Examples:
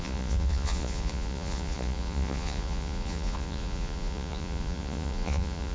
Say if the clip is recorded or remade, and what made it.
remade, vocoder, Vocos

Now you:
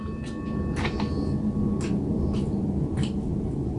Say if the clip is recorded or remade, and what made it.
recorded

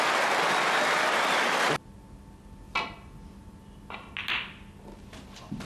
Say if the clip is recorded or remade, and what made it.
recorded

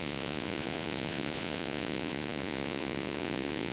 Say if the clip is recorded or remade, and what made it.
remade, vocoder, Vocos